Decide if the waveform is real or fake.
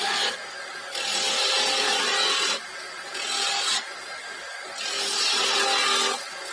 real